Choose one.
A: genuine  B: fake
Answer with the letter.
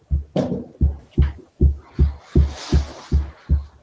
A